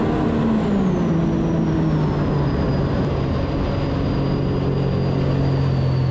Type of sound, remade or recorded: recorded